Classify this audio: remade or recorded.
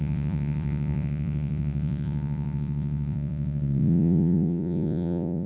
remade